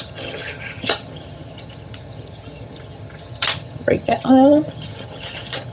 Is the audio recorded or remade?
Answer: remade